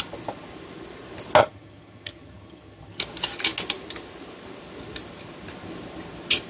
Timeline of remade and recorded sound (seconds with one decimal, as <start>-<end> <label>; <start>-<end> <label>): 0.0-1.4 recorded; 1.4-3.0 remade; 3.0-6.5 recorded